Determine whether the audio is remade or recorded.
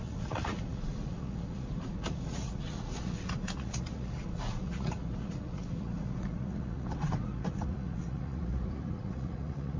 remade